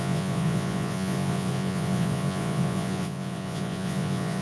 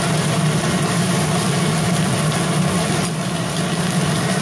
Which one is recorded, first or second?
second